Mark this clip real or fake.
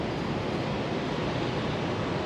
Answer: real